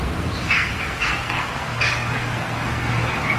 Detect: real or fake fake